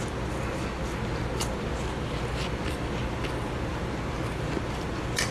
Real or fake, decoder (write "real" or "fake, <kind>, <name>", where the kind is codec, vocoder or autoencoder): real